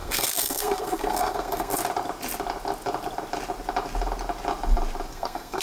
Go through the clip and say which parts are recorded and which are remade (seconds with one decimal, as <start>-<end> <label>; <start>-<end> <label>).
0.0-1.7 remade; 1.7-5.1 recorded; 5.1-5.6 remade